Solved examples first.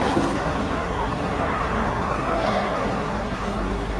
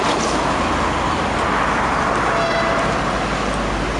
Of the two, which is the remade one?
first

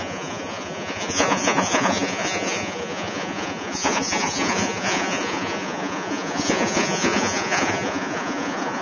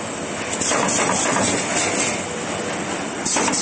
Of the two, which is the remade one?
first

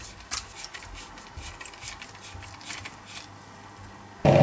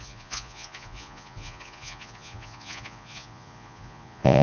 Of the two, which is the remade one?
second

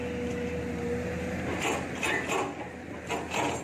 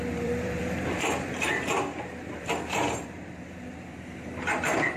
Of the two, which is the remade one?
second